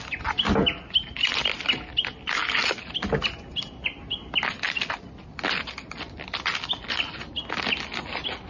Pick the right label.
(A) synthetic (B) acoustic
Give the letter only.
B